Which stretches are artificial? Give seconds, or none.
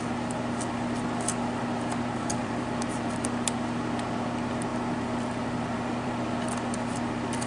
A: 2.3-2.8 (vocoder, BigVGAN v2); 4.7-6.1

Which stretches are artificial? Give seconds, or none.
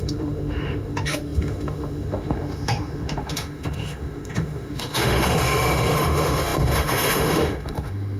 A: 0.0-8.2 (autoencoder, DAC-VAE)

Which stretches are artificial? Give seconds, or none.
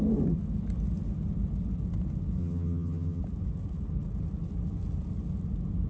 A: 2.4-3.2 (vocoder, HiFi-GAN)